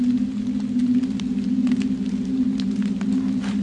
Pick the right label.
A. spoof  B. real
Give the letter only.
B